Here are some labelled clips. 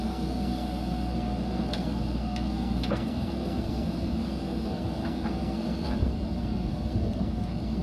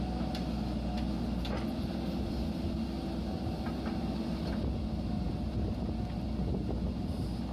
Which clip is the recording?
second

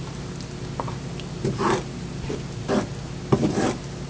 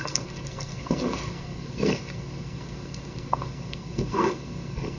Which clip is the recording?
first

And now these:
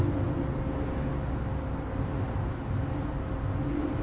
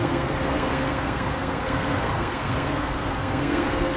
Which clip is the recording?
first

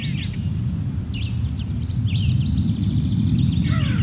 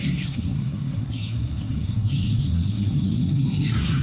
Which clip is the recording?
first